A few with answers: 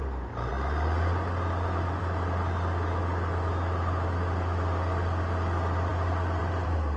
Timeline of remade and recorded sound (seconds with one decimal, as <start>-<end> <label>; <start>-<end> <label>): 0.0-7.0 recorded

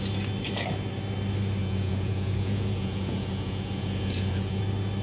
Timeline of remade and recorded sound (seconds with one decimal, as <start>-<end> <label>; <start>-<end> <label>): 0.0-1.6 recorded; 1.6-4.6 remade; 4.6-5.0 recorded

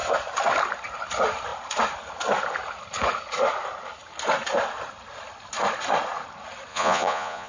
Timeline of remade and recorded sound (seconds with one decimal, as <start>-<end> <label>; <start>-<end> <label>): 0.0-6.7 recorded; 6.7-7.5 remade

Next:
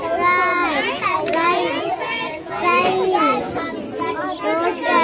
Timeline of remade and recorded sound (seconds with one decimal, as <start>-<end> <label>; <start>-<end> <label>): 0.0-0.5 recorded; 0.5-3.5 remade; 3.5-5.0 recorded

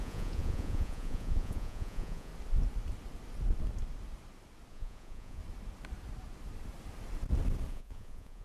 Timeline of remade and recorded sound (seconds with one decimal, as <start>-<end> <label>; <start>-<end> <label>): 0.0-2.3 remade; 2.3-4.7 recorded; 4.7-5.4 remade; 5.4-7.7 recorded; 7.7-8.4 remade